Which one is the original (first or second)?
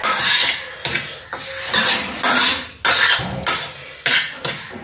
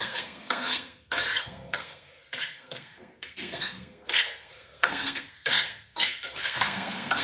first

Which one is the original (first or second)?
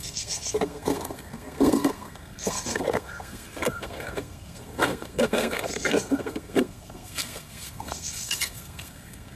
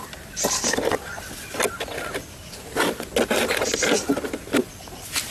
second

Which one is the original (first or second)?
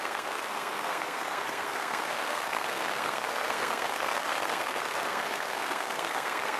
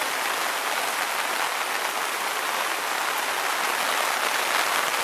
second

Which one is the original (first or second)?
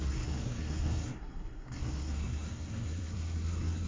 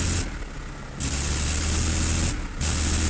second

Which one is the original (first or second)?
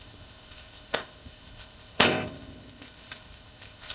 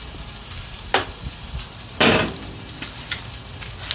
second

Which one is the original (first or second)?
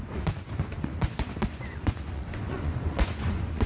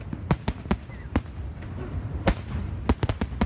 second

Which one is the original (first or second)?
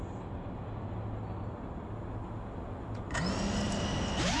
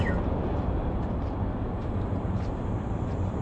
first